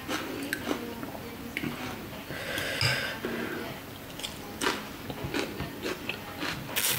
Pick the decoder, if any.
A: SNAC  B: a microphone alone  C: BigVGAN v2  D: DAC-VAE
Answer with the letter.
B